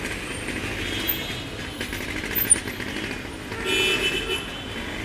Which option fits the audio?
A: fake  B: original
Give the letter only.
B